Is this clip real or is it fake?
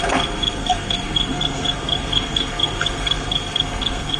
fake